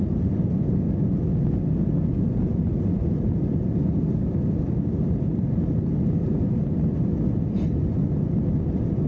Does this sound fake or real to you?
real